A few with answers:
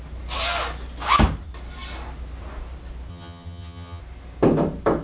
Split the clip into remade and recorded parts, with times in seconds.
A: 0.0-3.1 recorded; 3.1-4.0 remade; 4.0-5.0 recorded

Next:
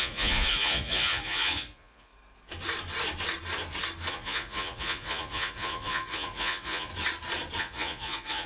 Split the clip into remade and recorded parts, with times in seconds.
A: 0.0-2.1 remade; 2.1-4.1 recorded; 4.1-6.9 remade; 6.9-7.6 recorded; 7.6-8.5 remade

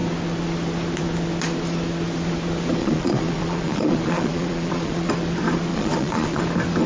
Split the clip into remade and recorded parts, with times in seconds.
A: 0.0-2.8 recorded; 2.8-5.1 remade; 5.1-5.7 recorded; 5.7-6.4 remade; 6.4-6.9 recorded

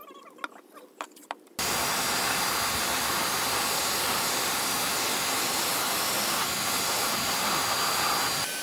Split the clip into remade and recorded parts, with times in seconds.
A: 0.0-8.6 recorded